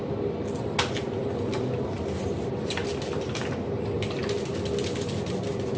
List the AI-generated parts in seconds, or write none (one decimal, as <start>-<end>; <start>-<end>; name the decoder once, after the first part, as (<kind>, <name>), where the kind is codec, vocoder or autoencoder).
none